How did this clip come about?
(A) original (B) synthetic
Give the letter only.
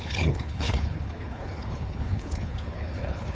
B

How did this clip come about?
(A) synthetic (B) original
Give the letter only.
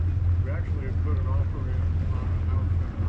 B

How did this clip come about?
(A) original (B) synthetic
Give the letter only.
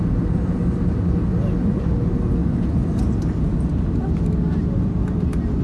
A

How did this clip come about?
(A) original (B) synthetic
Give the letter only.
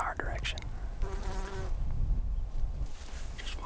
A